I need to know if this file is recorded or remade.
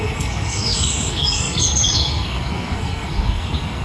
remade